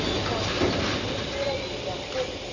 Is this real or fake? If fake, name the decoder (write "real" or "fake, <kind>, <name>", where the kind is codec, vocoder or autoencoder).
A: real